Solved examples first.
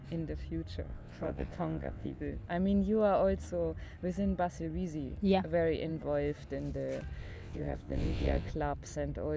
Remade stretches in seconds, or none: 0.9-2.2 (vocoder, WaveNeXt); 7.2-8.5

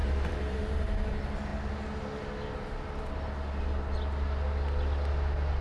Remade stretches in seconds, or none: 0.0-1.1 (vocoder, BigVGAN v2)

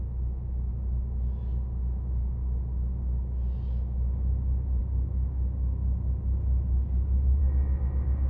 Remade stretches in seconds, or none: none